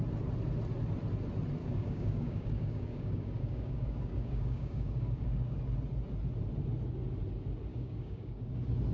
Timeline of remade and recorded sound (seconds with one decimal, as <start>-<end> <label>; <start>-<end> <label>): 0.0-1.6 recorded; 1.6-5.6 remade; 5.6-7.7 recorded; 7.7-8.5 remade; 8.5-8.9 recorded